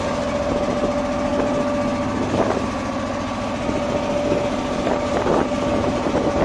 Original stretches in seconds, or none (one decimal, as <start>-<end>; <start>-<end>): 0.0-6.4